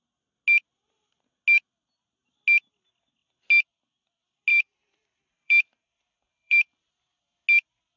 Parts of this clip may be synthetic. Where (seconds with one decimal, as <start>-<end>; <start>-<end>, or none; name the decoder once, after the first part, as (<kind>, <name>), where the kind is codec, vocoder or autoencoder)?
4.5-6.9 (vocoder, BigVGAN v2)